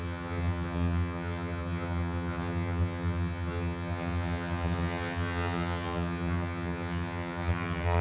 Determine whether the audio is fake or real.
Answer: fake